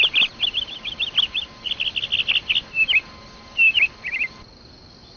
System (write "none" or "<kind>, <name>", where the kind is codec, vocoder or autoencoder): none